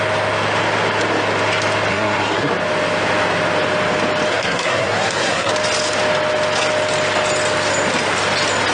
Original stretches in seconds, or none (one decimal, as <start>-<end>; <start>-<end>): 0.0-1.9; 2.5-4.3; 5.5-8.7